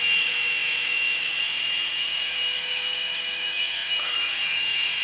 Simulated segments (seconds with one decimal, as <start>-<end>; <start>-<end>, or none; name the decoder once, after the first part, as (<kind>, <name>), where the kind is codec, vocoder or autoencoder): 0.0-5.0 (autoencoder, DAC-VAE)